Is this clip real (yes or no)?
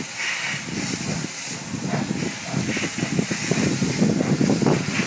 yes